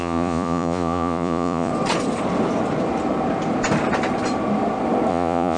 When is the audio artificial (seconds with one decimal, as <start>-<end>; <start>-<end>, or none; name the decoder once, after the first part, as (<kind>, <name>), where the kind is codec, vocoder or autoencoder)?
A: 0.0-1.7 (vocoder, Vocos); 5.1-5.6